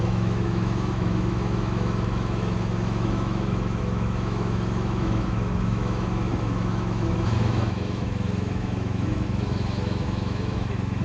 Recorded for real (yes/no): no